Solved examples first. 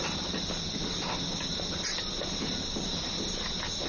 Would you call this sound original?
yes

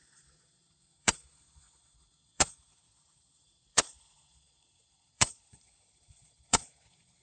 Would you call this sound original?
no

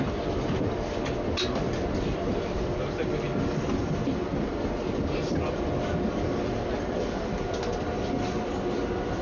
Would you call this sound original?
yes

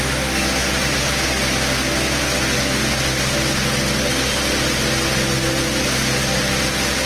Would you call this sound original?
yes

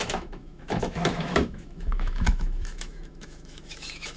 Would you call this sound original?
no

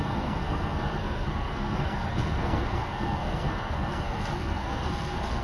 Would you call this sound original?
no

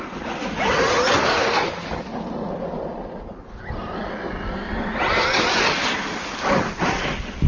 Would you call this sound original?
yes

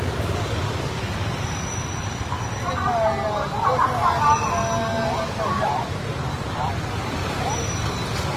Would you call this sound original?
yes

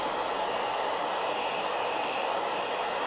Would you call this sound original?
yes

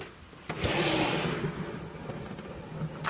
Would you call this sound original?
yes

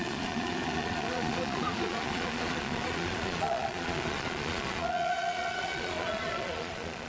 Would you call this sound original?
no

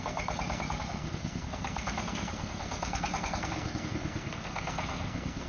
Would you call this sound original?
no